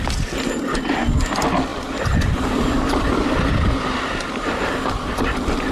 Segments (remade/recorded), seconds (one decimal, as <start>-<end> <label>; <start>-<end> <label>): 0.0-1.7 recorded; 1.7-5.1 remade; 5.1-5.7 recorded